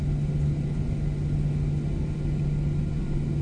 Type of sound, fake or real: real